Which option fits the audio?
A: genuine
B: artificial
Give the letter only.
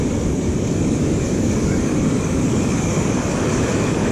B